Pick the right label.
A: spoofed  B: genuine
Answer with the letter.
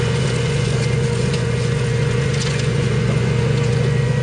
A